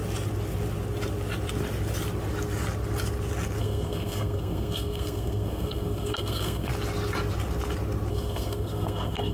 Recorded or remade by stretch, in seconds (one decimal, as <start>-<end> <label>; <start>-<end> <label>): 0.0-3.6 recorded; 3.6-6.7 remade; 6.7-8.1 recorded; 8.1-9.3 remade